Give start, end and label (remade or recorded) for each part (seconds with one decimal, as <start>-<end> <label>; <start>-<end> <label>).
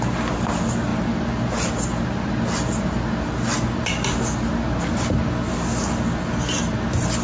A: 0.0-7.2 recorded